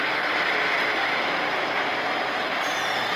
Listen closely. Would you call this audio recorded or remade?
recorded